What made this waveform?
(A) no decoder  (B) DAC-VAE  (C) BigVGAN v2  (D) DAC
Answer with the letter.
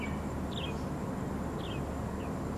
A